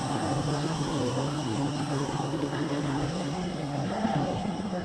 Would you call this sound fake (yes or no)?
yes